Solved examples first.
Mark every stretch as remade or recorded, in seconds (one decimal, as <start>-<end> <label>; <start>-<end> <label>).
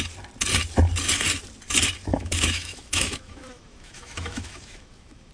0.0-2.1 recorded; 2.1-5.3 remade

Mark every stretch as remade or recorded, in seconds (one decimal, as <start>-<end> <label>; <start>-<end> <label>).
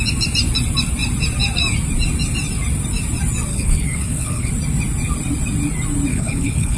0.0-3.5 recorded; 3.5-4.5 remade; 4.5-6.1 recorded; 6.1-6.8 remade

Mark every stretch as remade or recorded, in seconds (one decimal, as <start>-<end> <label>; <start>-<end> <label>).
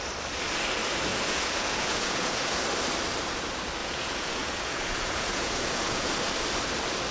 0.0-1.1 recorded; 1.1-2.6 remade; 2.6-3.8 recorded; 3.8-6.1 remade; 6.1-7.1 recorded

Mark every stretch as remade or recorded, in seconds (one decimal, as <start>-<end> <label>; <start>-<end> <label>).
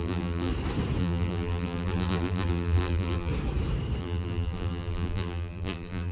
0.0-0.5 remade; 0.5-1.0 recorded; 1.0-3.3 remade; 3.3-4.0 recorded; 4.0-6.1 remade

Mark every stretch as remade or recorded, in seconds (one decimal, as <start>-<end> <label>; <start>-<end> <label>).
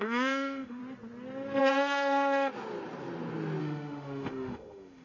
0.0-0.8 remade; 0.8-1.6 recorded; 1.6-2.5 remade; 2.5-3.6 recorded; 3.6-5.0 remade